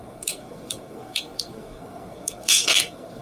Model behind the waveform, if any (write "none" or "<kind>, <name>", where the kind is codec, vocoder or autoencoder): codec, SNAC